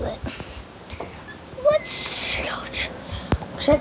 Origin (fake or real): fake